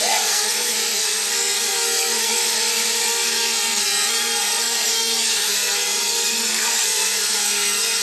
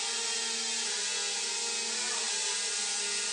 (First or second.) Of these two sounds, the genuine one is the second